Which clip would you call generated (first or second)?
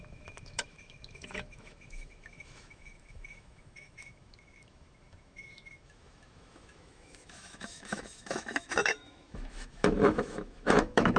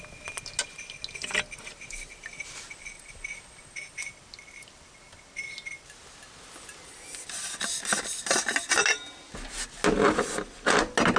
first